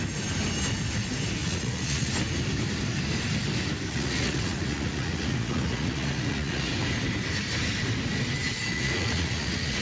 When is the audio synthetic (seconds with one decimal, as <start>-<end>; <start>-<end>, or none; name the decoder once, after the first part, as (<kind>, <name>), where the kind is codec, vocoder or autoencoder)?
1.4-2.1 (vocoder, Vocos); 3.9-6.7; 8.7-9.8

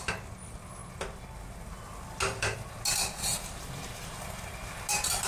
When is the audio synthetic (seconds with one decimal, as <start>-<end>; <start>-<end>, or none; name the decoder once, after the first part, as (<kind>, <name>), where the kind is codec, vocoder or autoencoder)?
none